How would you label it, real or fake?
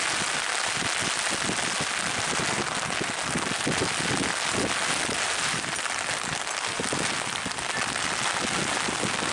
real